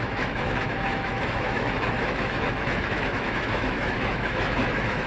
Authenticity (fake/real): fake